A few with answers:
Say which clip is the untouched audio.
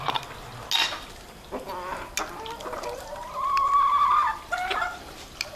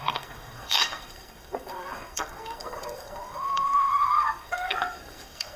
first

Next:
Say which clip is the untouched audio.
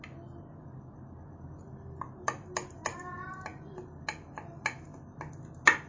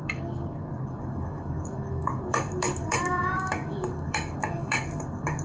first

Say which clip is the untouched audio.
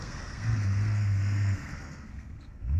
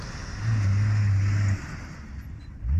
second